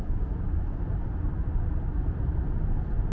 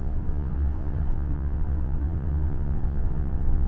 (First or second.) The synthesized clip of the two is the second